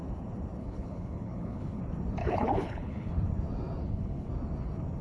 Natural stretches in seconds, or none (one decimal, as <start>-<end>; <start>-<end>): 0.0-0.6; 1.8-2.2; 3.1-3.8; 4.3-5.0